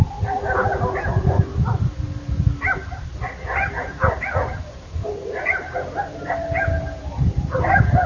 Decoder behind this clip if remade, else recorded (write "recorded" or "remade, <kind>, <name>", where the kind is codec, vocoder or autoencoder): recorded